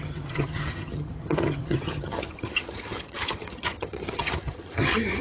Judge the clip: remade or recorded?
remade